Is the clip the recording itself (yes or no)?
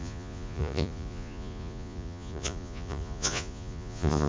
no